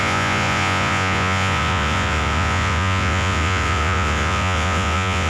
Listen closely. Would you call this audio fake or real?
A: fake